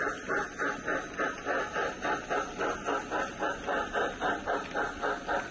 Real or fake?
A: real